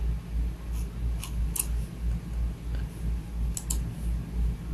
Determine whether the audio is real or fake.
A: real